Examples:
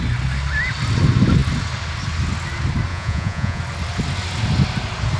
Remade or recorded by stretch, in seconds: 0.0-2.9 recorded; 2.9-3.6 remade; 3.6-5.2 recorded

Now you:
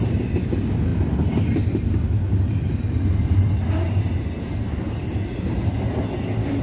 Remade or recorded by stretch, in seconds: 0.0-6.6 recorded

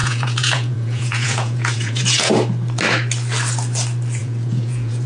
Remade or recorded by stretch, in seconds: 0.0-2.3 remade; 2.3-4.2 recorded; 4.2-5.1 remade

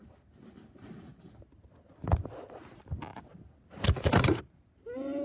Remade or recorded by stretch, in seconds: 0.0-5.2 recorded

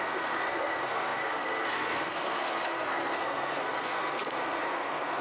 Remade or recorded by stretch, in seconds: 0.0-5.2 remade